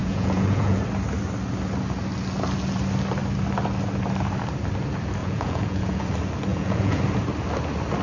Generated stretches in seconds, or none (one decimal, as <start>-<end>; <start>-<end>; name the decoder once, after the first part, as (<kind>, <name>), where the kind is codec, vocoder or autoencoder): 0.0-0.8 (vocoder, Vocos); 5.2-6.0; 6.5-7.0